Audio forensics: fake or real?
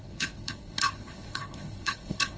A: fake